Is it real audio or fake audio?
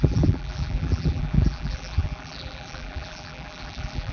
fake